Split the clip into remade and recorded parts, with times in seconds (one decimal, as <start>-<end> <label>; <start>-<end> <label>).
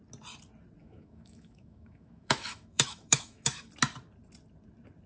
0.0-0.8 recorded; 0.8-3.7 remade; 3.7-5.1 recorded